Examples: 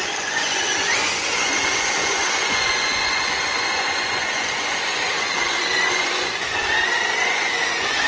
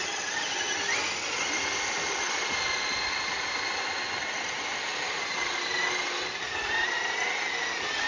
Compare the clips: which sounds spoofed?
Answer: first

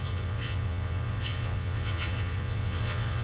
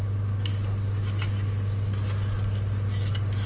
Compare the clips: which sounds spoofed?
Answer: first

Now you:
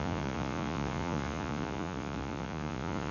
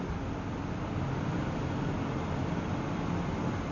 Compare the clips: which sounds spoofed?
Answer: first